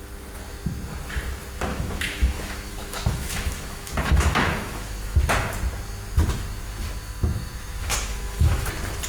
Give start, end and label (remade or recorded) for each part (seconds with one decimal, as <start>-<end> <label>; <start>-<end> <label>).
0.0-1.7 recorded; 1.7-5.2 remade; 5.2-7.3 recorded; 7.3-8.7 remade; 8.7-9.1 recorded